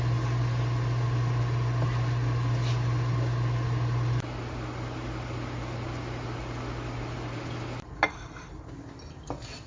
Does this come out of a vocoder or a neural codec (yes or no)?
no